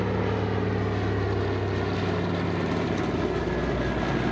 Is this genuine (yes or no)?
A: yes